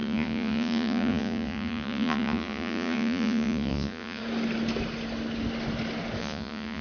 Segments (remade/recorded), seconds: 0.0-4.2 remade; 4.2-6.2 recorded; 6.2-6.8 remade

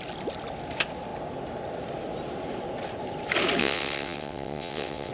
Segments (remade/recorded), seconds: 0.0-3.6 recorded; 3.6-5.1 remade